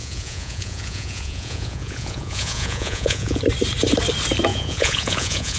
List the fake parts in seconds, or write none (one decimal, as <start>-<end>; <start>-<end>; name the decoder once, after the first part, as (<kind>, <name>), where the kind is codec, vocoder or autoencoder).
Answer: 0.0-3.4 (vocoder, Vocos); 4.5-5.6